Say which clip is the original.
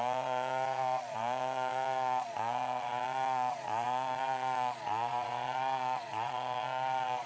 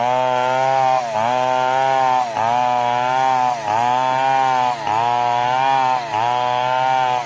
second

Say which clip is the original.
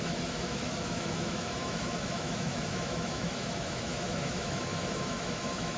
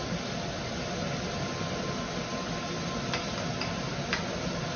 second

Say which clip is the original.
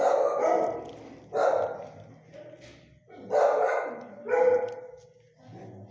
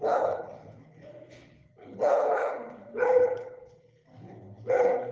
first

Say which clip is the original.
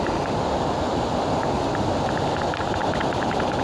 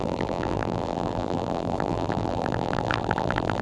first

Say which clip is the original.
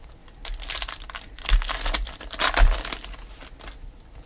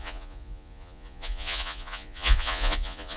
first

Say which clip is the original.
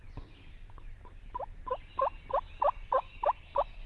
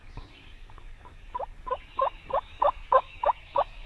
first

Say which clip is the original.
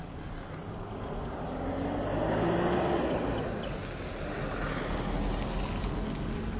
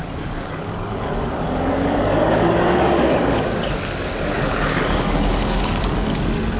first